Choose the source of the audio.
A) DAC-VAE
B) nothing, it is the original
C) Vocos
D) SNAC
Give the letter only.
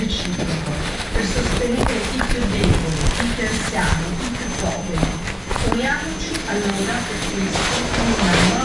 B